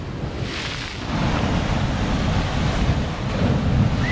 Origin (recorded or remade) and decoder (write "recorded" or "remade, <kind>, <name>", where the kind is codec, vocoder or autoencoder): recorded